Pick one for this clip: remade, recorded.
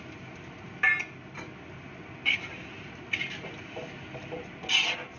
recorded